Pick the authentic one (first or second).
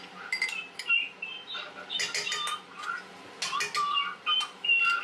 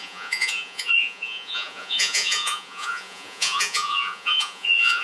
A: first